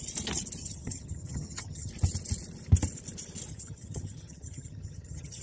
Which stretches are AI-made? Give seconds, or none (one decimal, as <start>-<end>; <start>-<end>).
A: 0.6-1.9; 3.5-5.4